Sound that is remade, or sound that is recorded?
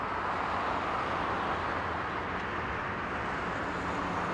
recorded